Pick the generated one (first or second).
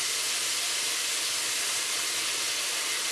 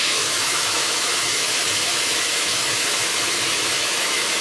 second